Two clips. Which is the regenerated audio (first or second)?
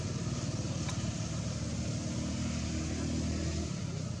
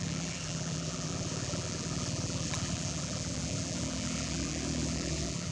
second